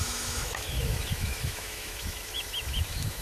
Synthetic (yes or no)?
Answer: yes